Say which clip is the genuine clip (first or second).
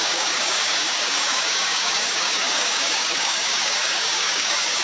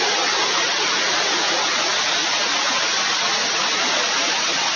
second